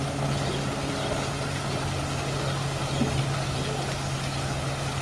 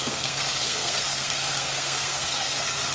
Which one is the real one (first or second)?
first